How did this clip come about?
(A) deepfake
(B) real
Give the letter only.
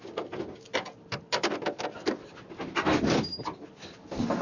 B